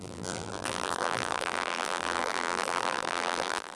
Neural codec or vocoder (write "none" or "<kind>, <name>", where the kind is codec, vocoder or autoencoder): vocoder, BigVGAN v2